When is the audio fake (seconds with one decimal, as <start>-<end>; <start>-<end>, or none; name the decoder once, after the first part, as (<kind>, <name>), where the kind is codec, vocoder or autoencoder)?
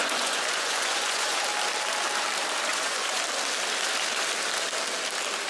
0.0-1.4 (vocoder, Vocos); 2.7-3.2